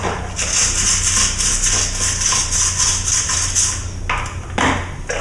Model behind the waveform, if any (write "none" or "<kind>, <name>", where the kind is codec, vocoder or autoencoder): none